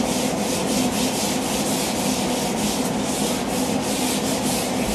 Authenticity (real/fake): real